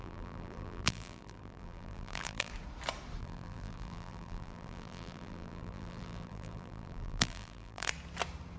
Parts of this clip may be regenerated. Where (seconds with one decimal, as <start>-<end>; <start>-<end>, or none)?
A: 0.0-2.5; 3.2-7.9